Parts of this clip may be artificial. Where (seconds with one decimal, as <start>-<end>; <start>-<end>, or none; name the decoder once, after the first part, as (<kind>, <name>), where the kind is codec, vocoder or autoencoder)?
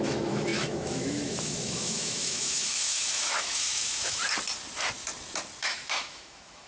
0.0-4.2 (autoencoder, DAC-VAE); 5.6-6.7